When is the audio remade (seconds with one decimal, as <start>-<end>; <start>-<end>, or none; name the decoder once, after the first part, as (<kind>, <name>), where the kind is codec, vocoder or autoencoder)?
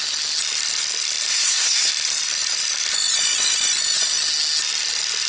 1.3-1.9 (codec, SNAC)